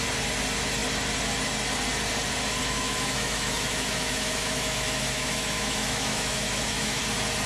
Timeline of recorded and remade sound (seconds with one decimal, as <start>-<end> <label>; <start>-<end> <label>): 0.0-2.6 recorded; 2.6-7.0 remade; 7.0-7.5 recorded